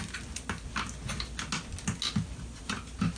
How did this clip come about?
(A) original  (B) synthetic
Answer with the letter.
A